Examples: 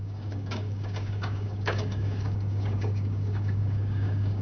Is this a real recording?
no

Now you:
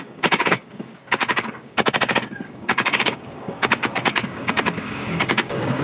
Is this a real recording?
no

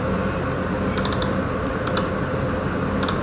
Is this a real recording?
yes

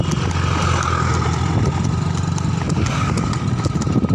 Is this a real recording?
yes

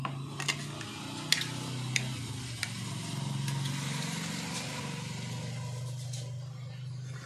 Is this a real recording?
yes